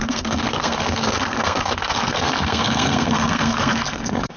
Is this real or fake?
fake